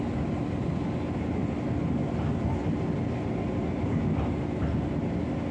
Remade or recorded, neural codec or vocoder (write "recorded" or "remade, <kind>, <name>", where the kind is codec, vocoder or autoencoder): recorded